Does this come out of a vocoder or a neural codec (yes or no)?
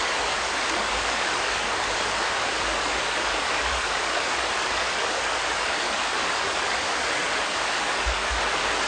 yes